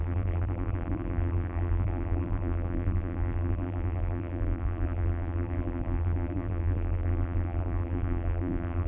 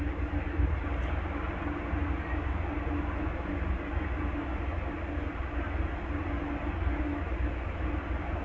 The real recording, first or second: second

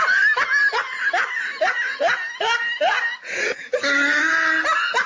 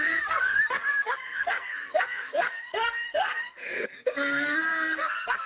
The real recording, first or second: first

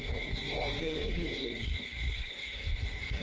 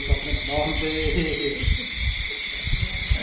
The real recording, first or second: second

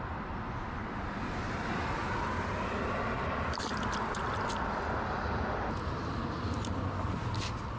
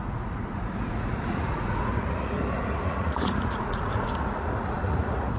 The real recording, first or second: first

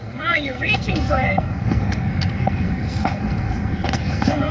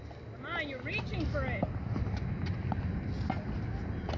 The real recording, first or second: second